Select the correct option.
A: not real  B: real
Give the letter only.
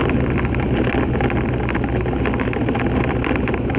B